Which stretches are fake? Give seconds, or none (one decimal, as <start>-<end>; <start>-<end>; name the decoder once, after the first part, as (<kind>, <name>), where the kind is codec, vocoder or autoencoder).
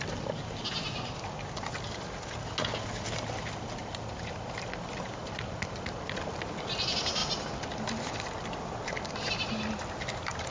none